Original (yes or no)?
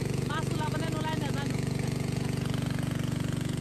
no